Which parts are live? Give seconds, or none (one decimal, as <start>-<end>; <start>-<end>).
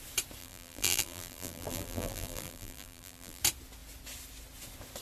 0.0-0.4; 3.4-5.0